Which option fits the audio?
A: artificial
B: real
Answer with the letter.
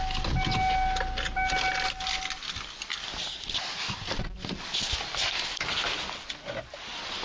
B